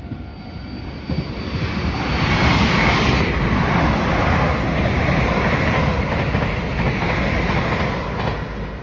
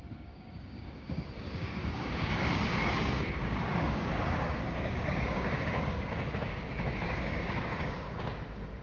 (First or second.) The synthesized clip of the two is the second